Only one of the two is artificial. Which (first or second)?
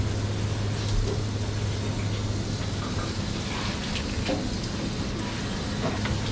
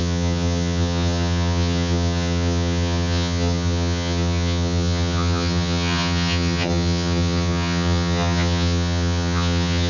second